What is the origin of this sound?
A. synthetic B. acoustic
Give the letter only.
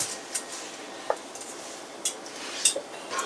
B